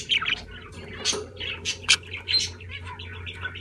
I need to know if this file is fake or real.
real